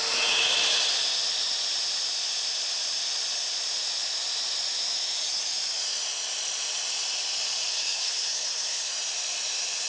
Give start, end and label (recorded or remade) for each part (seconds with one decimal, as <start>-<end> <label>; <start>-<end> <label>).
0.0-7.7 recorded; 7.7-8.9 remade; 8.9-9.9 recorded